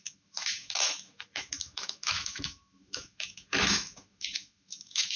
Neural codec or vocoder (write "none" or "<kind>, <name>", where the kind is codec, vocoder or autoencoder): autoencoder, DAC-VAE